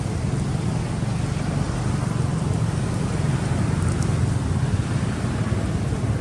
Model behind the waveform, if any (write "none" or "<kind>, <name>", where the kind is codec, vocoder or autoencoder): none